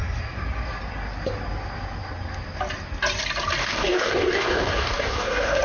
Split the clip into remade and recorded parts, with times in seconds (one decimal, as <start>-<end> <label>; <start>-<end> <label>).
0.0-3.6 recorded; 3.6-5.6 remade